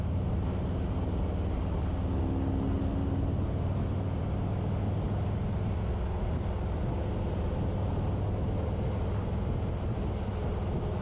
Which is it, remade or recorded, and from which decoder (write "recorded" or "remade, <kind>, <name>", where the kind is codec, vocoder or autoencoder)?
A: recorded